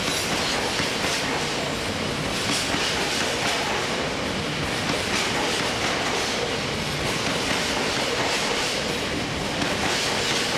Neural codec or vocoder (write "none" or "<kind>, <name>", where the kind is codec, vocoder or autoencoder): none